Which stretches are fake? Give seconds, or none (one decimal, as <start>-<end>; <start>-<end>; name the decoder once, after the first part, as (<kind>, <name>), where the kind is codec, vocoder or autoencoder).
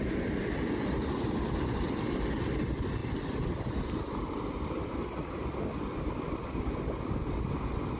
3.0-6.0 (vocoder, BigVGAN v2)